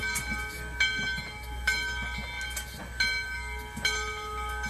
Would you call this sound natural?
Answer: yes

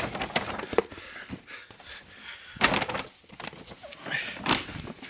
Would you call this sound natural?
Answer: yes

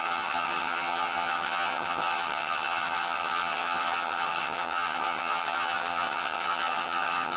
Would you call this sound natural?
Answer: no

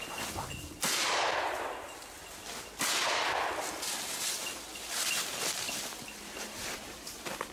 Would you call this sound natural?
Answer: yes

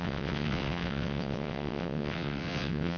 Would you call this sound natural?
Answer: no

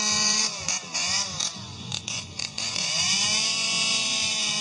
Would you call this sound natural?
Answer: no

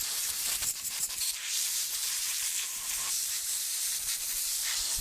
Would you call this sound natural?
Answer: no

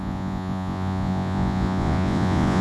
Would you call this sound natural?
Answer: no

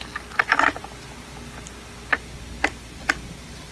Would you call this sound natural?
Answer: yes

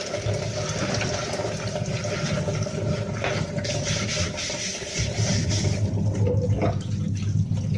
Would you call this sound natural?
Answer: yes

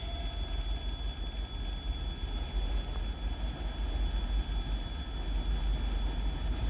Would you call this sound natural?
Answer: yes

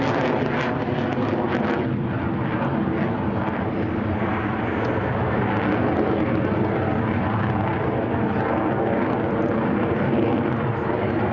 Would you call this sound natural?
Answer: yes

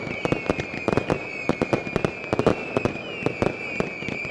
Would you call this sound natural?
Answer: yes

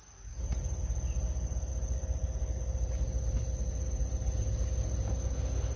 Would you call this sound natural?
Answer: yes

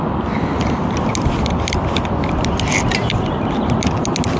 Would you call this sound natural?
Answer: yes